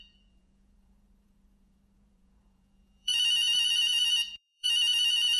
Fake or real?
fake